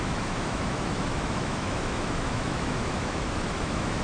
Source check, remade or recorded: remade